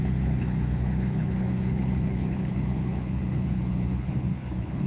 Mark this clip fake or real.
fake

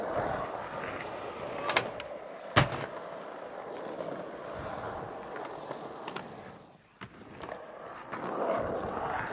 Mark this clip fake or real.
real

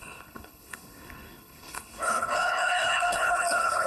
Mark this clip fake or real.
fake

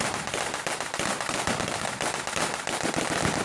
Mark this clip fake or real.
real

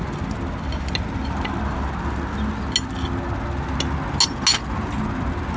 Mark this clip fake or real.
real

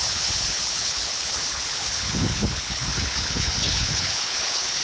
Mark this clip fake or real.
fake